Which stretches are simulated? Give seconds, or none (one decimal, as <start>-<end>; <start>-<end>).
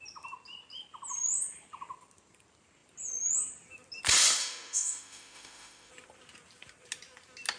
4.4-5.9